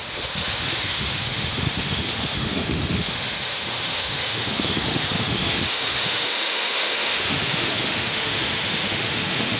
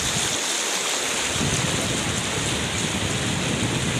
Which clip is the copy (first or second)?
first